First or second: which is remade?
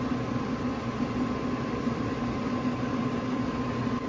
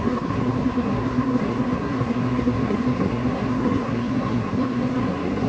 second